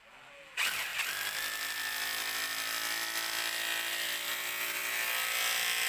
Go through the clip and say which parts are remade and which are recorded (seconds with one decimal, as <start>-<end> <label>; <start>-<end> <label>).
0.0-5.9 recorded